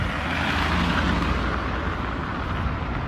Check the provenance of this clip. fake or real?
real